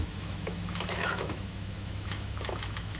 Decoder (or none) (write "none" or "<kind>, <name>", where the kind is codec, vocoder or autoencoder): autoencoder, DAC-VAE